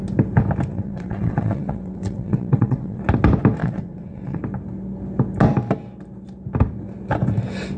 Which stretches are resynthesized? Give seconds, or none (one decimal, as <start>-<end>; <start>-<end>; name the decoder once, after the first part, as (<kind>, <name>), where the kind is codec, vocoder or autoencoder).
0.7-3.0 (vocoder, WaveNeXt); 3.6-4.4